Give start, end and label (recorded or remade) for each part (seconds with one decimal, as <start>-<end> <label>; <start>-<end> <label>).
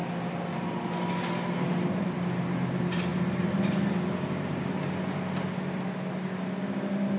0.0-7.2 recorded